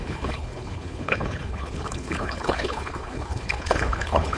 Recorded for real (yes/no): no